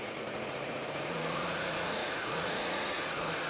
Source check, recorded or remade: remade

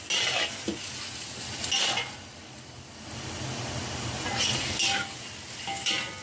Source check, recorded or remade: recorded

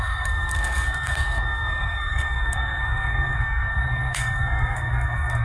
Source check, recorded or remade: remade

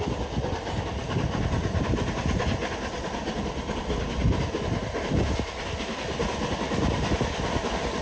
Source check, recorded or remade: recorded